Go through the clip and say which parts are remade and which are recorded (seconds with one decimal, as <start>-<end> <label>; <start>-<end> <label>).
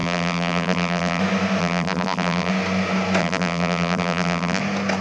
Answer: 0.0-1.2 remade; 1.2-1.6 recorded; 1.6-2.5 remade; 2.5-3.2 recorded; 3.2-4.6 remade; 4.6-5.0 recorded